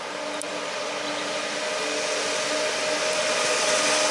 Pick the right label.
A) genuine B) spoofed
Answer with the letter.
A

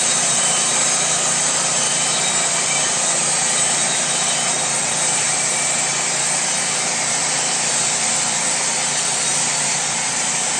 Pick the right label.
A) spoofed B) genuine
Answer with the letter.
A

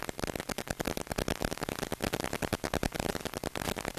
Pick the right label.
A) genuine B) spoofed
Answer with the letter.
A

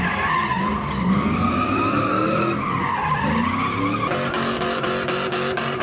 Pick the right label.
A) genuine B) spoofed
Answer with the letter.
A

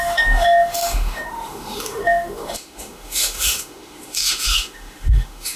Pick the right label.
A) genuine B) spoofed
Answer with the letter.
B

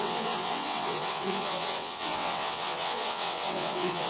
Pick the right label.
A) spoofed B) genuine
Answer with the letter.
A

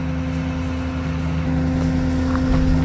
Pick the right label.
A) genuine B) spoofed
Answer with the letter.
A